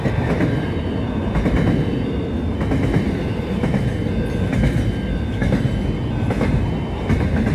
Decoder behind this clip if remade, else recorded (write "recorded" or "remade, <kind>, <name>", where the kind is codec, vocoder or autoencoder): recorded